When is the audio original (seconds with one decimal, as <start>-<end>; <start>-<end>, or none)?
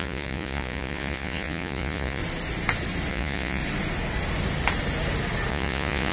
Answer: 2.2-3.1; 3.6-5.5